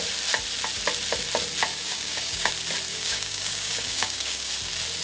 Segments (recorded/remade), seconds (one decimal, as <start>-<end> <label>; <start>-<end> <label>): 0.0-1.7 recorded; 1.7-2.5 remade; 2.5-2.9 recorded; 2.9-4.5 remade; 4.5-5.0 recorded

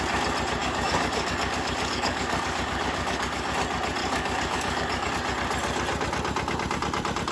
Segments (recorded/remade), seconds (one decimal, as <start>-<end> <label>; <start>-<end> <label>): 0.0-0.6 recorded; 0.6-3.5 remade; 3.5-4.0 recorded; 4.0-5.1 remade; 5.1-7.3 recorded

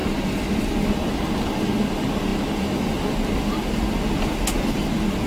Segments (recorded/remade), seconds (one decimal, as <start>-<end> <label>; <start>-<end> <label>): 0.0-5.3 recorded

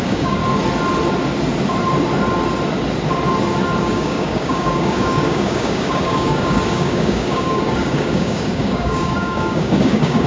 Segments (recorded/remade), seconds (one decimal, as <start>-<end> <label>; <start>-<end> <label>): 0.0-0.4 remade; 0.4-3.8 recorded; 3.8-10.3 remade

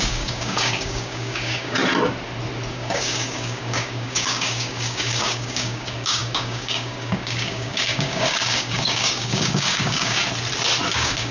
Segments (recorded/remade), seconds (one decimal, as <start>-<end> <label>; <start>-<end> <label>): 0.0-1.8 remade; 1.8-2.7 recorded; 2.7-10.2 remade; 10.2-10.9 recorded; 10.9-11.3 remade

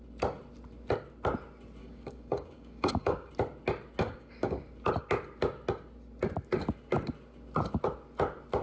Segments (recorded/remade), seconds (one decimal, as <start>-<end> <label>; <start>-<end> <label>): 0.0-1.8 recorded; 1.8-3.3 remade; 3.3-4.0 recorded; 4.0-4.6 remade; 4.6-8.6 recorded